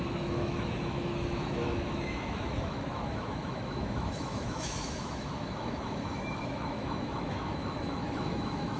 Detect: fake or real fake